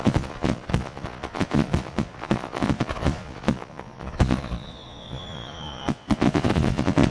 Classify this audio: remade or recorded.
remade